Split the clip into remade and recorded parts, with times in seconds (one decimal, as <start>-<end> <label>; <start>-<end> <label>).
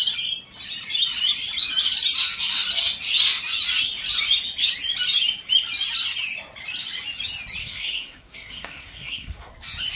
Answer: 0.0-7.6 recorded; 7.6-9.5 remade; 9.5-10.0 recorded